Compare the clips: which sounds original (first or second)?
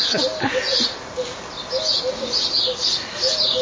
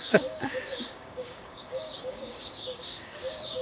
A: first